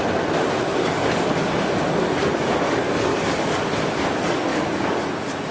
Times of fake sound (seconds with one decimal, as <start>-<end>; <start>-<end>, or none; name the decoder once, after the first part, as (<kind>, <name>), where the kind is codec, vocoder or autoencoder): 0.7-1.5 (codec, DAC); 3.1-3.7; 4.5-5.1